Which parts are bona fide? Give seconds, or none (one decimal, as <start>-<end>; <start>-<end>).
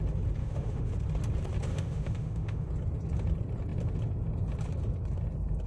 0.0-0.4; 0.9-1.7; 2.7-5.7